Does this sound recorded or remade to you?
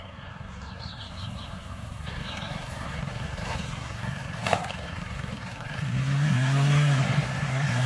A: remade